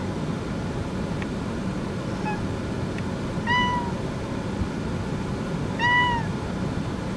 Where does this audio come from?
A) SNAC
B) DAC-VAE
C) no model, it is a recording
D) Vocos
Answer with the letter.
C